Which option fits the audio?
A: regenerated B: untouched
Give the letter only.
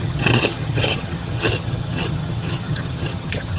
A